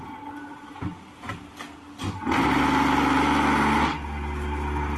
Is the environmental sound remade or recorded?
recorded